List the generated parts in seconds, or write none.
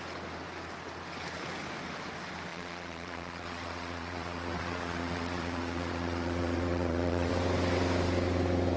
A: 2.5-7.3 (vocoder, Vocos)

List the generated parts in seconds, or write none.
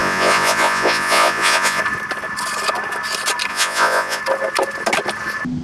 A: 0.0-1.8 (vocoder, Vocos); 3.5-4.2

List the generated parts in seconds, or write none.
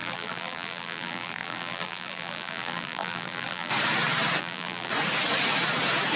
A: 0.0-3.7 (vocoder, BigVGAN v2); 4.4-4.9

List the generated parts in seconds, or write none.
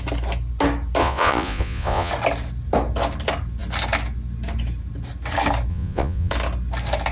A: 1.0-2.1 (vocoder, Vocos); 5.7-6.3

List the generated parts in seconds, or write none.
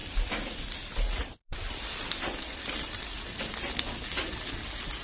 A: 0.0-3.0 (vocoder, BigVGAN v2)